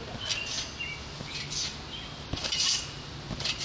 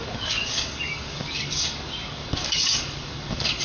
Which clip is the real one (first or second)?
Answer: first